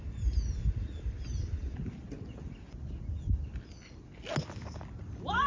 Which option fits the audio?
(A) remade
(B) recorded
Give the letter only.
B